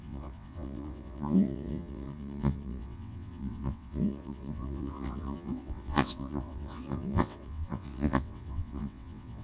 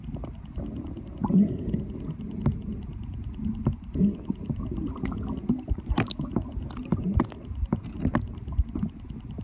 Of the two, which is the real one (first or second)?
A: second